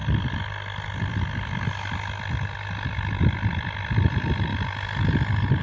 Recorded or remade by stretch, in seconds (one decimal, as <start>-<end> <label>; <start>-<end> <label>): 0.0-5.6 recorded